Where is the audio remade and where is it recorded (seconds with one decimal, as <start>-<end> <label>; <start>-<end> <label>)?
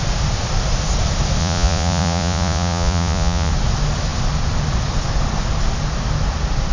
0.0-1.4 recorded; 1.4-3.5 remade; 3.5-6.7 recorded